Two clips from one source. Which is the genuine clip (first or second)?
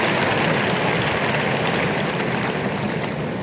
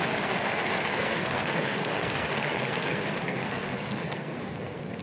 first